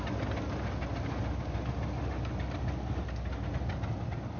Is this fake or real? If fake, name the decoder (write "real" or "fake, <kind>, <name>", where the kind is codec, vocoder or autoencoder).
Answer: real